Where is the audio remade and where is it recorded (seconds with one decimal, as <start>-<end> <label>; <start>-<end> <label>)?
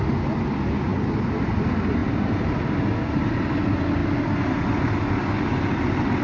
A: 0.0-6.2 recorded